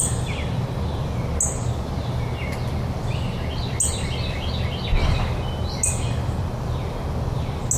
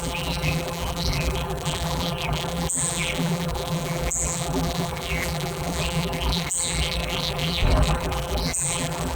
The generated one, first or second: second